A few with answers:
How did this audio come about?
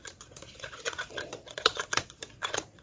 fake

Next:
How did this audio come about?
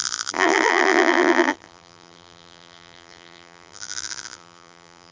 fake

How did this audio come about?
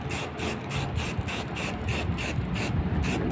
real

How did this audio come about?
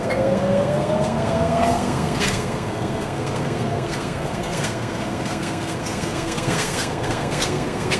fake